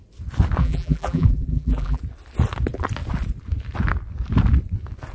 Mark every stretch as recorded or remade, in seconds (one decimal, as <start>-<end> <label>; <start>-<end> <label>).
0.0-0.6 recorded; 0.6-2.0 remade; 2.0-5.1 recorded